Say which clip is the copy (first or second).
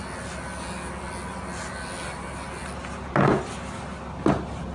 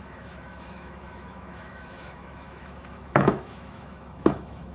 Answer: second